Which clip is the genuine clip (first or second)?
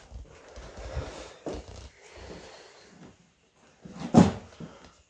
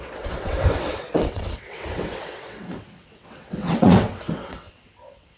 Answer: first